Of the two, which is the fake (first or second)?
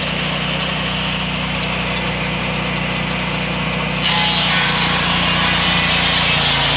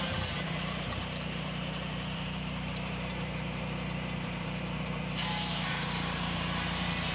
second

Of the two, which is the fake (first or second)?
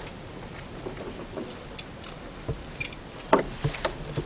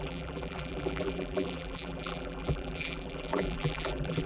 second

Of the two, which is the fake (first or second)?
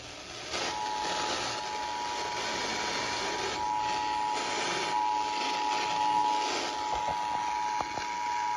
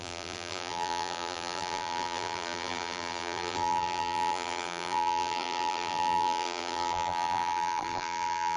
second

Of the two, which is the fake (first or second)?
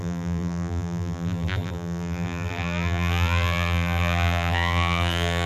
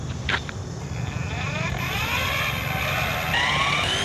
first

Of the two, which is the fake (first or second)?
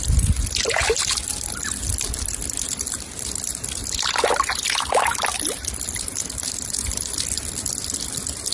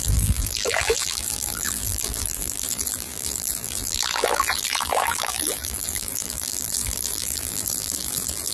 second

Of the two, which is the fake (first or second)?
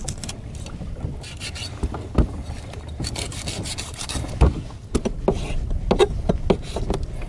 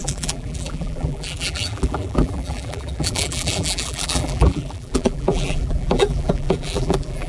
second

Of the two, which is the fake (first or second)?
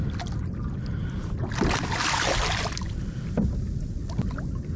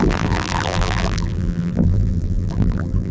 second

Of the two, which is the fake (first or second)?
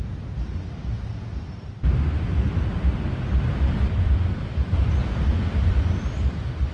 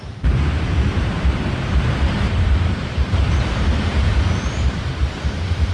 second